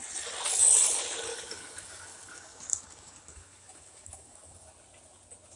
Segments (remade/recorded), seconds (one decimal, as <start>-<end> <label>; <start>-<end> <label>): 0.0-1.3 recorded; 1.3-4.7 remade; 4.7-5.6 recorded

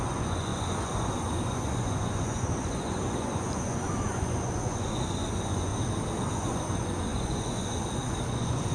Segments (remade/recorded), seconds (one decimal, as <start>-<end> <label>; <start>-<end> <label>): 0.0-5.7 remade; 5.7-6.3 recorded; 6.3-8.7 remade

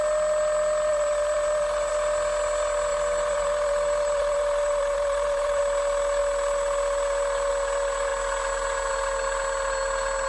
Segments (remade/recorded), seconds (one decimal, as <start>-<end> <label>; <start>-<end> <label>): 0.0-0.9 recorded; 0.9-1.9 remade; 1.9-2.9 recorded; 2.9-5.6 remade; 5.6-10.3 recorded

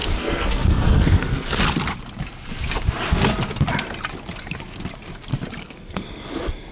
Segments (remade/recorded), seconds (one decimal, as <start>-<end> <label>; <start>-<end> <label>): 0.0-1.6 remade; 1.6-5.6 recorded; 5.6-6.3 remade; 6.3-6.7 recorded

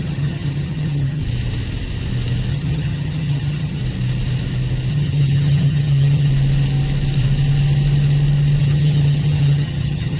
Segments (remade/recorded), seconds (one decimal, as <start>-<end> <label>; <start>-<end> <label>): 0.0-1.2 remade; 1.2-2.5 recorded; 2.5-3.8 remade; 3.8-4.9 recorded; 4.9-6.3 remade; 6.3-8.6 recorded; 8.6-10.2 remade